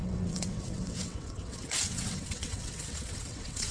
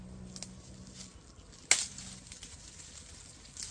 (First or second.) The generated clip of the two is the first